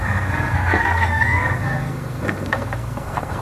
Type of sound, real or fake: fake